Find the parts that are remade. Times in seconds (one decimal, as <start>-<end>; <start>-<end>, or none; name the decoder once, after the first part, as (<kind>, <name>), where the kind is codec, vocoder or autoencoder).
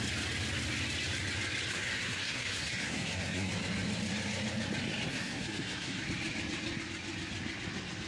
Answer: 1.7-3.5 (codec, SNAC); 5.1-6.0